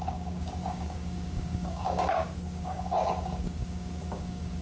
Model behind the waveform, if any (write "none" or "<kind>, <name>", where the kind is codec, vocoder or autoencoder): codec, DAC